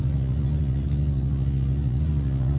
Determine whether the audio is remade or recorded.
remade